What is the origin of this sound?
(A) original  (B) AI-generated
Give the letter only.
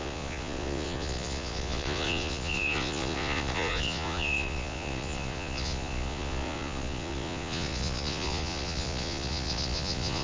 B